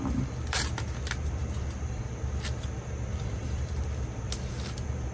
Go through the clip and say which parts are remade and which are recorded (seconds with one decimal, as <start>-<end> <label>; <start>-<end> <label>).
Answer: 0.0-1.4 recorded; 1.4-2.0 remade; 2.0-3.1 recorded; 3.1-3.7 remade; 3.7-5.1 recorded